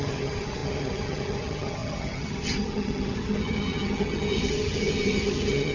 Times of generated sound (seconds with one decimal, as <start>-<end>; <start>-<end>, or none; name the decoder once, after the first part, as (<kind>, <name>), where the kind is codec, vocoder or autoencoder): 0.0-5.7 (vocoder, HiFi-GAN)